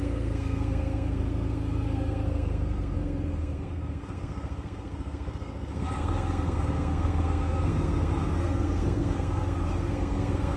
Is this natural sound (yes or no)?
no